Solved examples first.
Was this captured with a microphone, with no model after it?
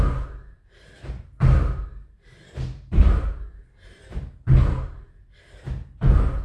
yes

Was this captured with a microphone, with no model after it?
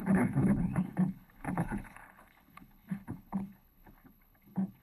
no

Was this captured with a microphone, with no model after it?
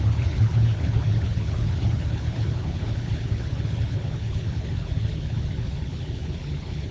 no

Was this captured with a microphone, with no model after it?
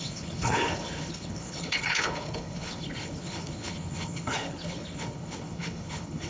no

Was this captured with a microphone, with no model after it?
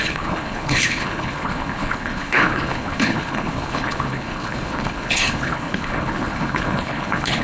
no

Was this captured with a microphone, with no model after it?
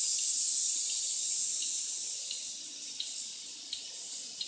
yes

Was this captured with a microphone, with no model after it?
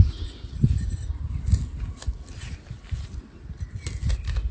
yes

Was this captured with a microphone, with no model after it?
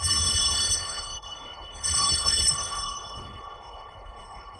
no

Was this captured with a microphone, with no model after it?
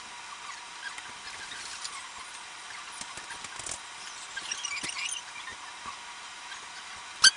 yes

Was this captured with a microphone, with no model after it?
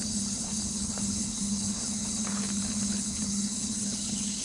no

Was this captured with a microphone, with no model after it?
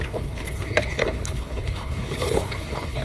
no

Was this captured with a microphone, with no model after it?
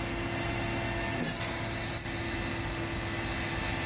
yes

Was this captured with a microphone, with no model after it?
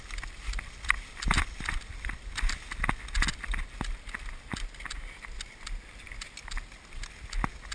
yes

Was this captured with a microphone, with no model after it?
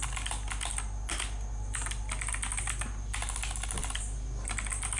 yes